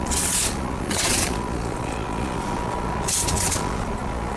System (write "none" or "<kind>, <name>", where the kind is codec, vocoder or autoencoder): vocoder, Vocos